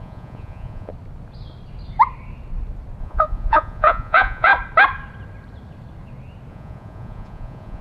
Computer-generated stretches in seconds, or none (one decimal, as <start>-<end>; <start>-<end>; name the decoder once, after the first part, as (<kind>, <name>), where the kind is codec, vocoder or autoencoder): 0.0-0.9 (vocoder, Vocos); 3.0-4.5; 6.5-7.8